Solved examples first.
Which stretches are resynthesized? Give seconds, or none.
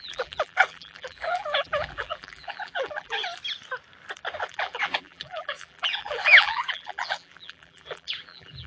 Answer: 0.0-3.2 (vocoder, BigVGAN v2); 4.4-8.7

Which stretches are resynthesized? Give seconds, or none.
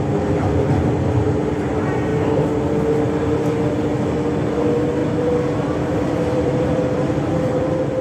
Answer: 5.0-8.0 (vocoder, BigVGAN v2)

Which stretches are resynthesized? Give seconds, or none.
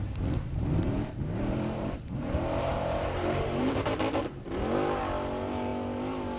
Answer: 0.0-3.8 (vocoder, BigVGAN v2)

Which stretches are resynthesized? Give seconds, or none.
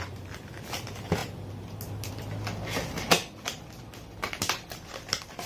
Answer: 3.2-5.1 (vocoder, BigVGAN v2)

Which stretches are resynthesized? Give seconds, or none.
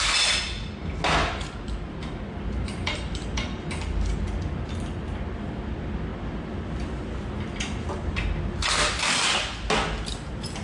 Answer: 1.2-4.6 (vocoder, BigVGAN v2)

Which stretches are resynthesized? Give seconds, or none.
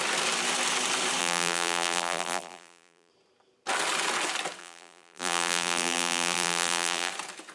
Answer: 1.2-3.1 (vocoder, BigVGAN v2); 4.6-7.1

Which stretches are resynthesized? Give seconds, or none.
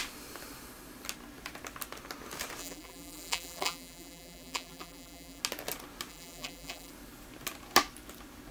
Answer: 2.6-5.4 (vocoder, BigVGAN v2); 6.1-6.9